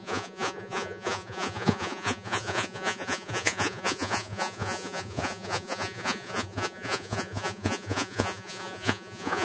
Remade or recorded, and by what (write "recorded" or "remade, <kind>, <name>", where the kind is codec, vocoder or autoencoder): remade, vocoder, Vocos